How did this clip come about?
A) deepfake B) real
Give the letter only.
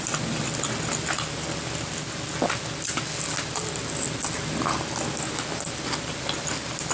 B